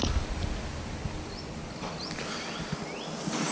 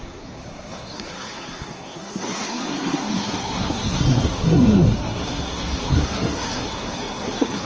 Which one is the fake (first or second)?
second